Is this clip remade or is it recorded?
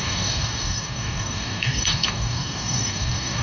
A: remade